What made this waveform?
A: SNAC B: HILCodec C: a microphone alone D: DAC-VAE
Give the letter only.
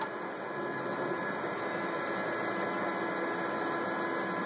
C